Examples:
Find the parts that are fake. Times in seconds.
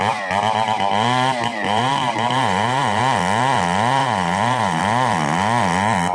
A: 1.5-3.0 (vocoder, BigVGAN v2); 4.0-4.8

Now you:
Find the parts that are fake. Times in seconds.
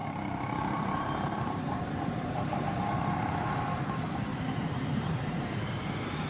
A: 0.0-3.4 (vocoder, BigVGAN v2); 4.3-5.7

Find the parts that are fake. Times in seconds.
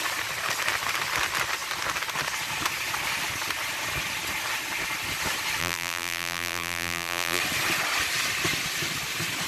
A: 5.6-7.4 (vocoder, BigVGAN v2)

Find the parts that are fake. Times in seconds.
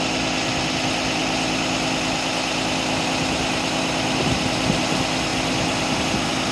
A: none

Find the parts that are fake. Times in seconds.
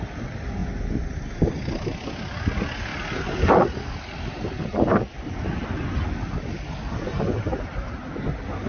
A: none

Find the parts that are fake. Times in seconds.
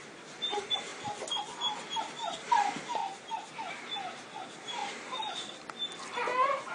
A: 3.0-3.5 (vocoder, BigVGAN v2); 4.8-5.5